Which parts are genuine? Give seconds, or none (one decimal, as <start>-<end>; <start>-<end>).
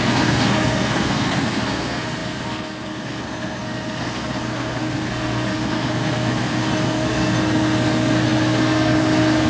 none